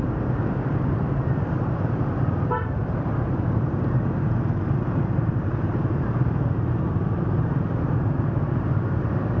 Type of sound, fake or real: fake